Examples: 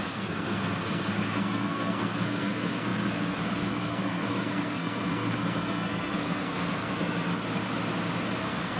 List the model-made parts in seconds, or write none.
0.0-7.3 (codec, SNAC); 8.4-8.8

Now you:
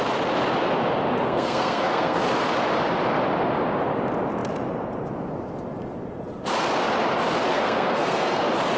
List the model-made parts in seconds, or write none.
1.2-2.2 (codec, SNAC); 7.5-8.4

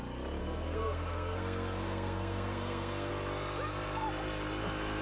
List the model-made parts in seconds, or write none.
0.4-3.1 (codec, SNAC)

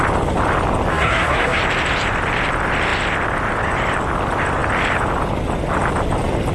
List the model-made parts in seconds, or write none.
0.9-1.6 (codec, SNAC)

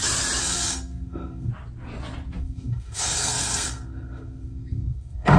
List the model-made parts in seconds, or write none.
0.4-1.5 (codec, SNAC); 2.4-5.4

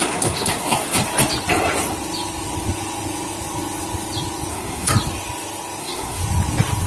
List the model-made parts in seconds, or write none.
0.0-1.0 (codec, SNAC); 4.5-4.9; 5.8-6.2

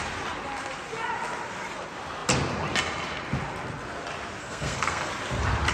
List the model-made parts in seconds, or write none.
4.4-5.1 (codec, SNAC)